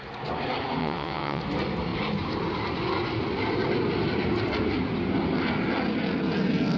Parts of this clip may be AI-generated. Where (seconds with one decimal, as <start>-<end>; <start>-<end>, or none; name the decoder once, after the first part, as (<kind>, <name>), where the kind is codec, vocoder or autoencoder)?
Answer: 0.8-1.4 (vocoder, WaveNeXt)